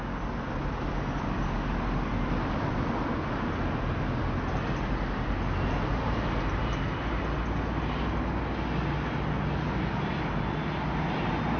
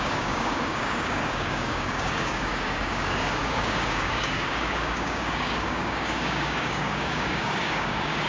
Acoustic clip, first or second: first